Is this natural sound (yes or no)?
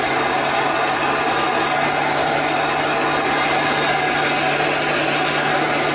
yes